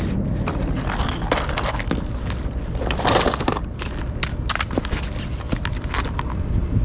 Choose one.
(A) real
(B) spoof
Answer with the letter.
A